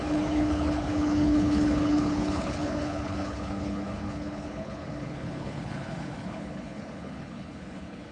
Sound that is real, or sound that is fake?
fake